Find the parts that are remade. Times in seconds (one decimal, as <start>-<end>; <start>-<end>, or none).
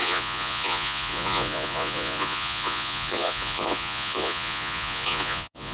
0.0-5.7